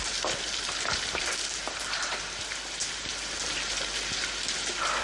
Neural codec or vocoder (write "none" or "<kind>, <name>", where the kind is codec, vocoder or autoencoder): none